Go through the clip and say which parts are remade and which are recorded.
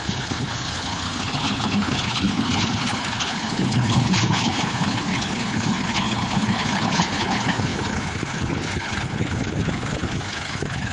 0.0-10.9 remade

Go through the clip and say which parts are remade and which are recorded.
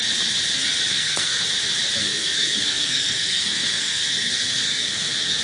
0.0-0.9 recorded; 0.9-1.4 remade; 1.4-2.0 recorded; 2.0-5.4 remade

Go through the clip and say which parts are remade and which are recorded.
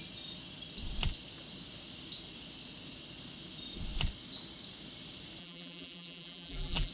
0.0-5.4 recorded; 5.4-6.9 remade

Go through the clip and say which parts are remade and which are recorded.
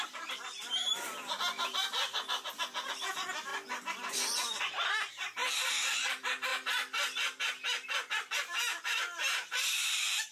0.0-1.8 remade; 1.8-2.9 recorded; 2.9-3.5 remade; 3.5-4.6 recorded; 4.6-5.4 remade; 5.4-6.0 recorded; 6.0-6.5 remade; 6.5-8.4 recorded; 8.4-10.3 remade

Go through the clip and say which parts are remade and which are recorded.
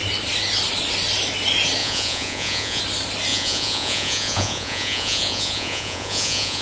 0.0-1.8 recorded; 1.8-2.8 remade; 2.8-3.3 recorded; 3.3-6.6 remade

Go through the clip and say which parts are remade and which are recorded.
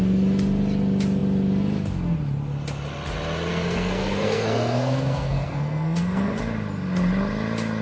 0.0-3.5 recorded; 3.5-6.4 remade; 6.4-7.8 recorded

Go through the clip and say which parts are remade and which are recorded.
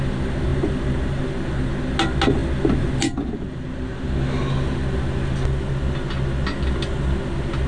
0.0-7.7 recorded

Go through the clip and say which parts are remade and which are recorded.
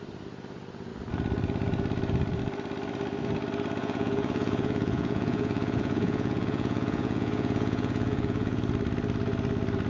0.0-3.8 recorded; 3.8-8.6 remade; 8.6-9.9 recorded